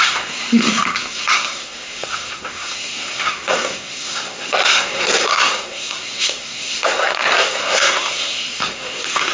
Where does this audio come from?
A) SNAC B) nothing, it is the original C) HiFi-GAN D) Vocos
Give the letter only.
A